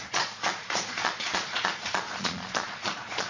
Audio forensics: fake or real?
fake